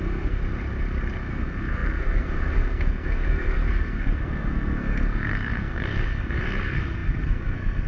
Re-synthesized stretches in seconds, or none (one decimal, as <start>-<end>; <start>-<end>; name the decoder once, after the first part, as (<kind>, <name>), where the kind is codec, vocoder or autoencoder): 0.0-0.4 (codec, SNAC); 1.3-7.9